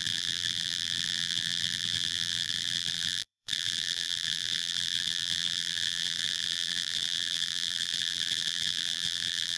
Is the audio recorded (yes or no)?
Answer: no